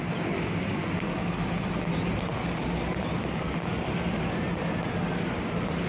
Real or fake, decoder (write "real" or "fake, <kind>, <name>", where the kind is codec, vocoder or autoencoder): real